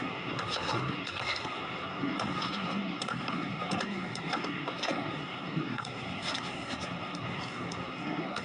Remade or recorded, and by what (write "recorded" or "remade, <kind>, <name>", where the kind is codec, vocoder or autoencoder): remade, codec, SNAC